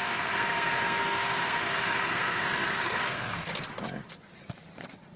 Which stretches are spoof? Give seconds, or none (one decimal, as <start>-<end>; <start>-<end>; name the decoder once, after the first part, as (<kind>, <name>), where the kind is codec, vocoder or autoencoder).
0.0-3.5 (codec, SNAC)